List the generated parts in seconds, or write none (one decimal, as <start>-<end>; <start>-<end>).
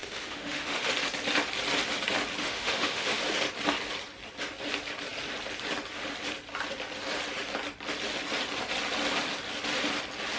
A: 0.0-0.9; 2.4-3.2